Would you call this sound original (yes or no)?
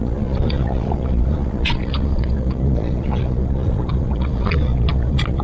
no